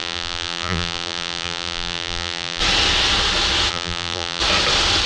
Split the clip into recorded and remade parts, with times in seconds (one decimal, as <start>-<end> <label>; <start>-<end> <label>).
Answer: 0.0-2.6 remade; 2.6-3.7 recorded; 3.7-4.4 remade; 4.4-5.1 recorded